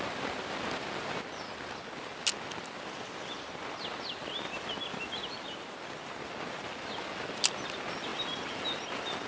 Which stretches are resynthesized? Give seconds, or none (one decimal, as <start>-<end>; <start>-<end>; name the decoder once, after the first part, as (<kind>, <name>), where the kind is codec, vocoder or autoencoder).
none